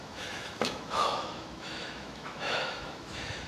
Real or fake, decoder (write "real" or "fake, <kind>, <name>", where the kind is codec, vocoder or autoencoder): fake, autoencoder, DAC-VAE